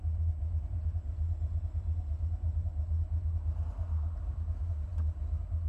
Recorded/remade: recorded